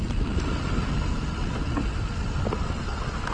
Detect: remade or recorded recorded